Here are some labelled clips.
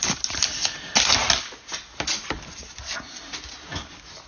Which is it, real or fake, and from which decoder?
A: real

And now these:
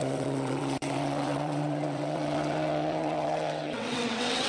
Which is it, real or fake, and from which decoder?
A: fake, vocoder, WaveNeXt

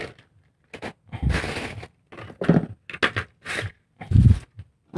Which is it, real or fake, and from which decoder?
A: real